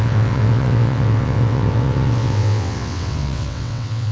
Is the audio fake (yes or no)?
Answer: yes